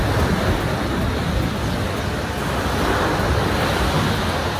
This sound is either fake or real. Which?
real